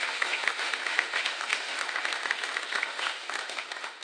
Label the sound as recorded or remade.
remade